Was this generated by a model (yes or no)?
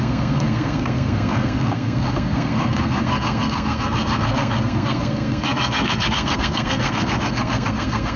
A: yes